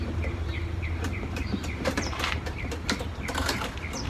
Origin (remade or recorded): remade